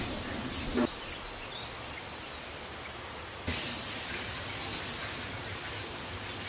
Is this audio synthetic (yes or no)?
no